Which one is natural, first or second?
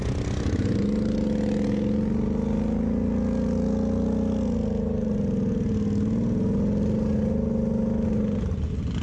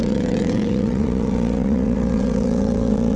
first